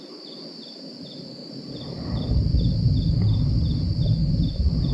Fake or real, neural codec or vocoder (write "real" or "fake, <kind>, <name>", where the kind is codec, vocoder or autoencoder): real